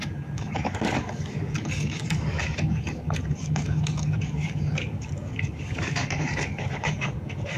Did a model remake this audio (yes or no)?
yes